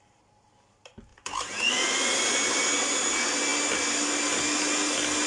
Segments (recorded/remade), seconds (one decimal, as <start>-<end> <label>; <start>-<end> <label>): 0.0-1.1 recorded; 1.1-1.7 remade; 1.7-5.3 recorded